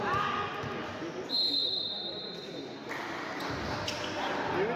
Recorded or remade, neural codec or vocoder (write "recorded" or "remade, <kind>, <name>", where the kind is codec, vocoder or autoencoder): recorded